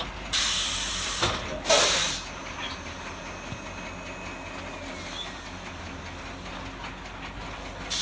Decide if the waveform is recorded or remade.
recorded